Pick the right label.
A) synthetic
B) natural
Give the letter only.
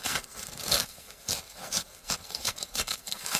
A